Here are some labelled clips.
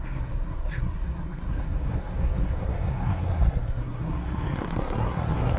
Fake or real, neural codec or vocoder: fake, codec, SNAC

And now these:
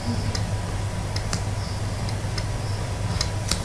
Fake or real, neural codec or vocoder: real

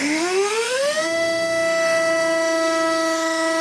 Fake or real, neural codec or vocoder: fake, autoencoder, DAC-VAE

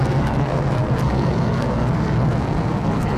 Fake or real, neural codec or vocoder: fake, codec, SNAC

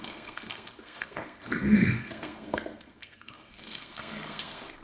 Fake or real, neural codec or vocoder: fake, codec, SNAC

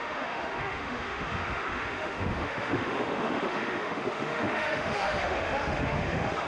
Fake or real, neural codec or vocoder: fake, autoencoder, DAC-VAE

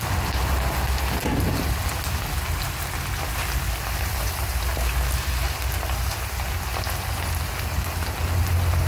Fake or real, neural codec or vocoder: real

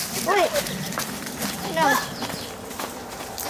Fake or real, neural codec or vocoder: real